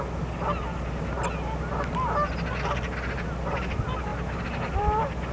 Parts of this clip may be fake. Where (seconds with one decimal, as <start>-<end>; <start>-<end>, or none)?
none